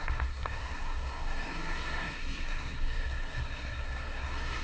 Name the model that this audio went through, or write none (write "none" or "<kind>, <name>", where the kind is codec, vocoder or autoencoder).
codec, SNAC